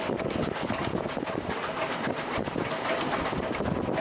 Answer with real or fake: real